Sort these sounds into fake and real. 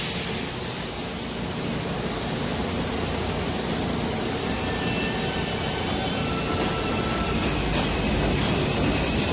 real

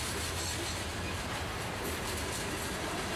real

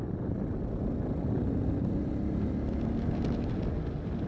real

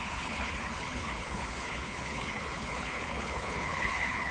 fake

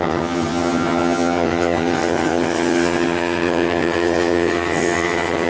fake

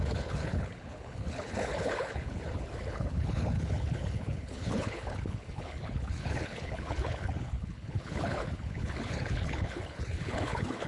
fake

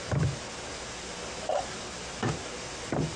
real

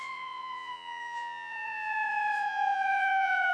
fake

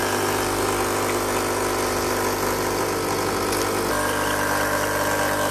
real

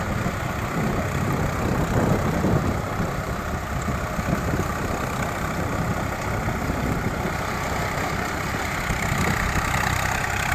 fake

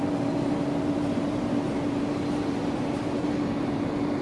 fake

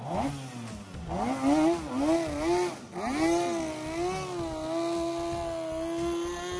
real